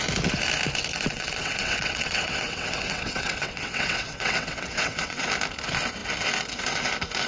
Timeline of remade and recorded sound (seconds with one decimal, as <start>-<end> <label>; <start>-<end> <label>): 0.0-0.9 recorded; 0.9-5.3 remade; 5.3-7.3 recorded